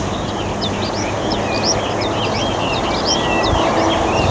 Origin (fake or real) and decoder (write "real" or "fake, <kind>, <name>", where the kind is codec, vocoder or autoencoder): real